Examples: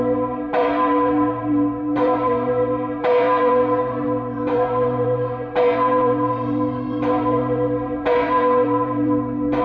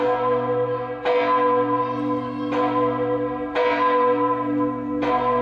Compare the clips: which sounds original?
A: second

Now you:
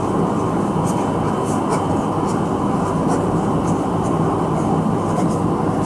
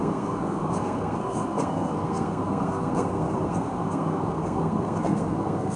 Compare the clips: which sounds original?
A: first